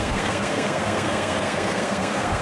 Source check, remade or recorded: remade